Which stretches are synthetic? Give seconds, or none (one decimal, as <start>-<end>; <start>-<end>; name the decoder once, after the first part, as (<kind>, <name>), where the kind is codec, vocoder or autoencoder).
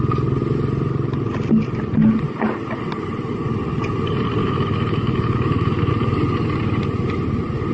4.4-5.9 (autoencoder, DAC-VAE)